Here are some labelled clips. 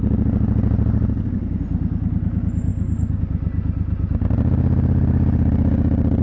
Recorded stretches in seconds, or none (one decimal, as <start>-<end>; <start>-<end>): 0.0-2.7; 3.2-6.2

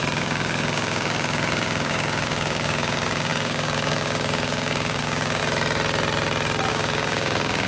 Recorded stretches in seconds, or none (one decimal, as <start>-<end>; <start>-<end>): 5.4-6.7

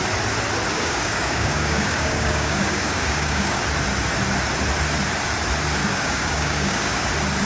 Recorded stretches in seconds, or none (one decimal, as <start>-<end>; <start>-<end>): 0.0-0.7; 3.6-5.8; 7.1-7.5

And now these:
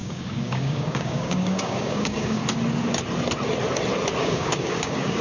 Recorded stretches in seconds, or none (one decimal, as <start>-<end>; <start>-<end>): 2.4-4.2

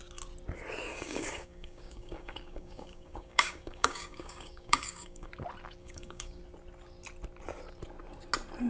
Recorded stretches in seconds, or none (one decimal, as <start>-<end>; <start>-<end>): 0.0-0.9; 5.3-5.8; 6.4-8.7

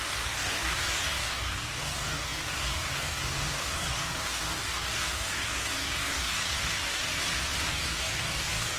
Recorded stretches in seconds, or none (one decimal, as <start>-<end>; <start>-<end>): 7.0-7.7